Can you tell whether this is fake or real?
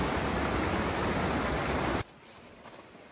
real